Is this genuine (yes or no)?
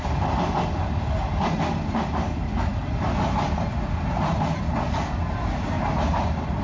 yes